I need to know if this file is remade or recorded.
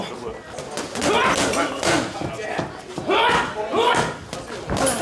recorded